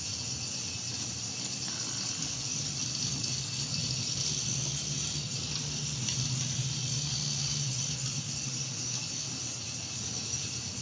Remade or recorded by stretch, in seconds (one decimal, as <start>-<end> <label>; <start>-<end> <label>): 0.0-10.8 recorded